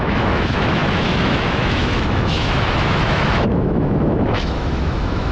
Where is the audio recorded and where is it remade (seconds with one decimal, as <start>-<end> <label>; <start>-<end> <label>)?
0.0-5.3 remade